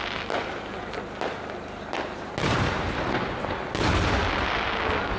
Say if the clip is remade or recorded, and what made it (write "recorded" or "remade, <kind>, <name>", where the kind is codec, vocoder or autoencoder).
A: recorded